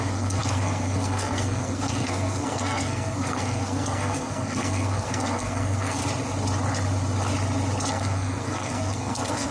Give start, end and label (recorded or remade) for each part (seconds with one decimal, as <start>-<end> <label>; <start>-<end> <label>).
0.0-6.0 remade; 6.0-7.9 recorded; 7.9-9.5 remade